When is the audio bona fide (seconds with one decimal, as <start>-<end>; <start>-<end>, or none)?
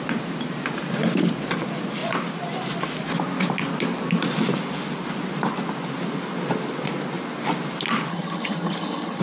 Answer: 0.0-8.1